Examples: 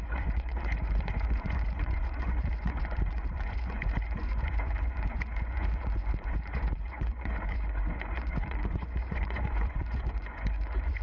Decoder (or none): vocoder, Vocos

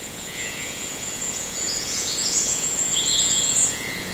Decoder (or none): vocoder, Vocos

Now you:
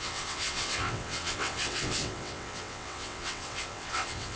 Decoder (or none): vocoder, WaveNeXt